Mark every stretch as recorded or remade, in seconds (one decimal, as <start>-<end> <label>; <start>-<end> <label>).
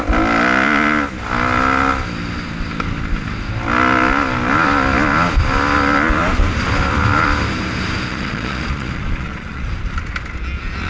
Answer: 0.0-8.1 recorded; 8.1-9.7 remade; 9.7-10.9 recorded